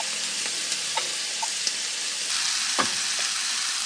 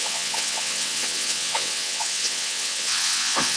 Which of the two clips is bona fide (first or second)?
first